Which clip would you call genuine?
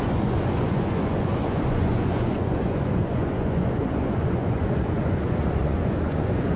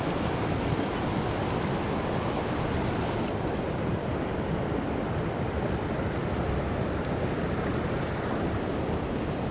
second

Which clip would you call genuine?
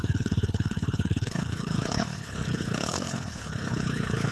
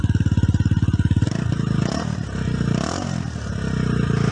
second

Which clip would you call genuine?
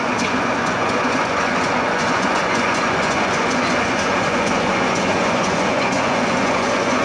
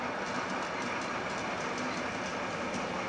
second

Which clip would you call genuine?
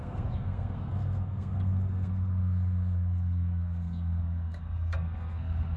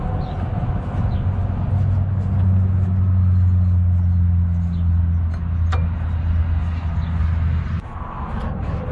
second